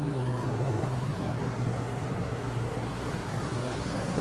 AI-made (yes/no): yes